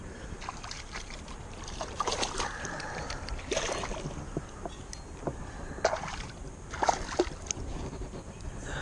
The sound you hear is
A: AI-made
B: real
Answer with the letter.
B